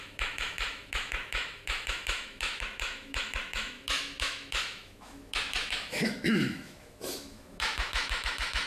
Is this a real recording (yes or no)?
no